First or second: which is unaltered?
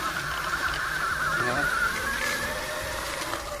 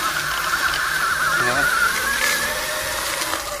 second